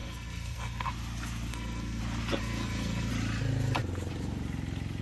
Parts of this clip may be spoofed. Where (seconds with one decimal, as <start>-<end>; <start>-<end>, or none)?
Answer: 0.0-0.9; 1.5-2.0; 2.4-3.1